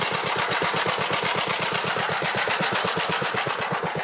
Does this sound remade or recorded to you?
recorded